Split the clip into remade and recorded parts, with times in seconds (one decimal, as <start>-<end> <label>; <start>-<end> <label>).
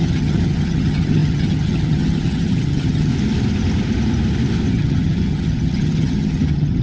0.0-3.1 remade; 3.1-4.7 recorded; 4.7-6.8 remade